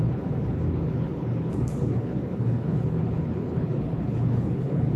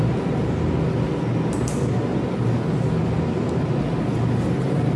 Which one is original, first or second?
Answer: second